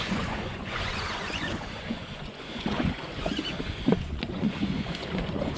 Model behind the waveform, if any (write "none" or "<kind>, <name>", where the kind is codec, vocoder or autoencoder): vocoder, Vocos